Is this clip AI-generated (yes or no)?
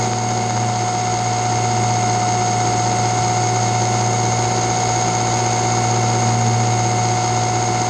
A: no